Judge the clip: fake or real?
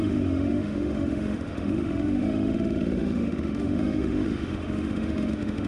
fake